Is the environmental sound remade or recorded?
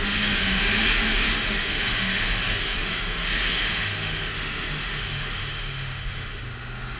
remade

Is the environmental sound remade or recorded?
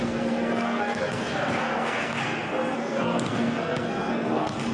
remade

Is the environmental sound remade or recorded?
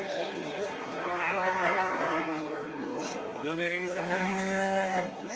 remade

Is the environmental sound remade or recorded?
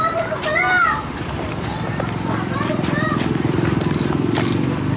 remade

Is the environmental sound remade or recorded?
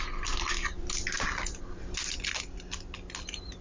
recorded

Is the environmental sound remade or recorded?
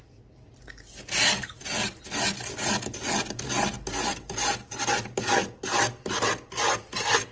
recorded